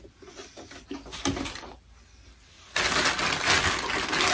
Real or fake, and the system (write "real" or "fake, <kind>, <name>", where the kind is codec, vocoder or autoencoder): real